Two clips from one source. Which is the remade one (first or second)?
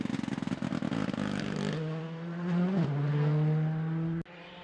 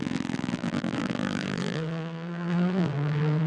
second